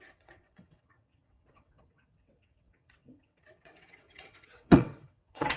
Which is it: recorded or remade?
remade